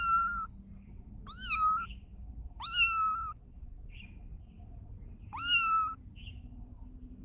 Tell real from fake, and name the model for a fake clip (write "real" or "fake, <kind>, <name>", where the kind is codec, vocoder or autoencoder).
real